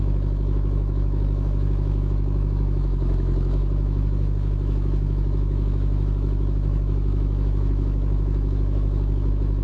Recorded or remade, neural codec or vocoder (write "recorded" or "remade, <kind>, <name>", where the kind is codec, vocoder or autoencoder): remade, autoencoder, DAC-VAE